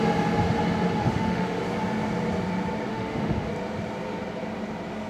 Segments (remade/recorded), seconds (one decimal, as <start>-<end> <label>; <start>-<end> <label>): 0.0-1.0 recorded; 1.0-1.6 remade; 1.6-2.9 recorded; 2.9-3.5 remade; 3.5-5.1 recorded